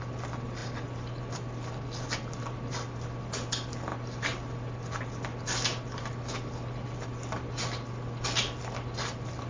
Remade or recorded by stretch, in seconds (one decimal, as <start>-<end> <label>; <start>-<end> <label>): 0.0-9.5 recorded